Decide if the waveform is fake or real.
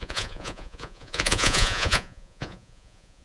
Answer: fake